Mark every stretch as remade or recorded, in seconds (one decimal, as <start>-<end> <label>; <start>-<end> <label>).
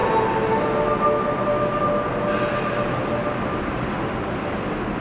0.0-5.0 recorded